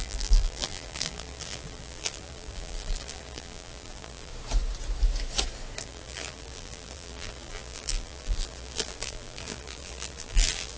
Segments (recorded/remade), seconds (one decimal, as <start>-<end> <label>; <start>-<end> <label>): 0.0-4.3 remade; 4.3-5.8 recorded; 5.8-10.8 remade